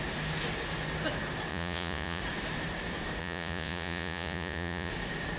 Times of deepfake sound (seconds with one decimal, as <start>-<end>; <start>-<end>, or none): 1.5-2.2; 3.2-4.9